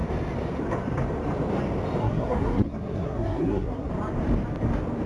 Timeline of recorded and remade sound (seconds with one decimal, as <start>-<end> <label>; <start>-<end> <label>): 0.0-2.0 recorded; 2.0-3.9 remade; 3.9-5.1 recorded